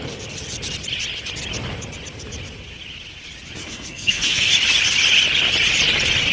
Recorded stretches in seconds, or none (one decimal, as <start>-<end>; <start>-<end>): 0.0-3.6; 4.5-6.3